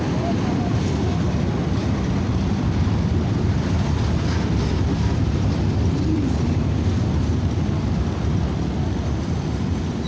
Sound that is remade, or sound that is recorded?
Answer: recorded